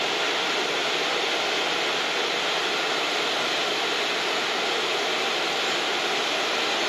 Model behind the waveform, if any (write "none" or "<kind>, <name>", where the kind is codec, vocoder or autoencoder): none